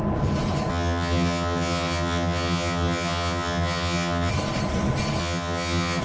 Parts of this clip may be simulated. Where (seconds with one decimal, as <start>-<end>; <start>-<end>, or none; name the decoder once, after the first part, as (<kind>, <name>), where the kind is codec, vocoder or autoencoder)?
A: 0.7-4.3 (vocoder, HiFi-GAN); 5.2-6.0